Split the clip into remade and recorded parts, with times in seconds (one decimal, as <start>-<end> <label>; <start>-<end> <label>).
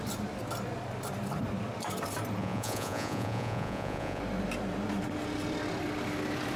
0.0-2.4 recorded; 2.4-4.2 remade; 4.2-6.6 recorded